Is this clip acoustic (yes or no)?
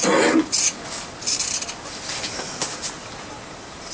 yes